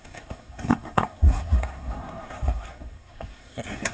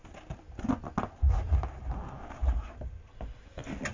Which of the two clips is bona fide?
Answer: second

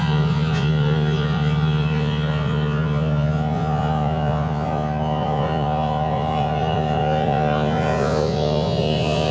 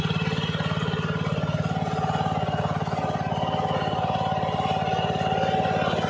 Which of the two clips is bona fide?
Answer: second